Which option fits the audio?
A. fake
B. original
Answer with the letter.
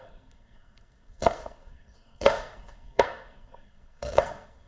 A